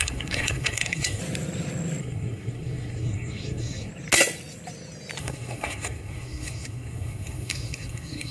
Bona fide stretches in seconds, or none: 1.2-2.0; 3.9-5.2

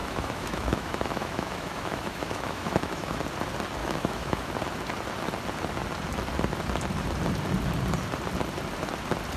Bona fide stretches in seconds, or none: 3.2-3.8; 4.5-9.4

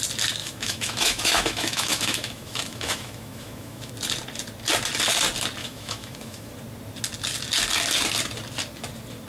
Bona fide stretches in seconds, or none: 0.0-0.4; 3.9-5.6; 6.5-9.3